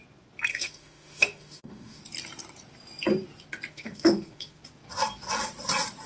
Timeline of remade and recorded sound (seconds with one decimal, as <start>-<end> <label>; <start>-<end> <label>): 0.0-0.5 recorded; 0.5-2.0 remade; 2.0-3.7 recorded; 3.7-4.6 remade; 4.6-6.1 recorded